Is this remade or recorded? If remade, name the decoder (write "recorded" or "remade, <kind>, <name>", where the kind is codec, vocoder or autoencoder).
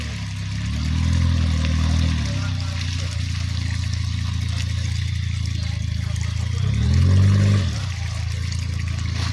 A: recorded